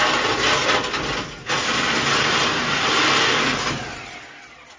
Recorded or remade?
recorded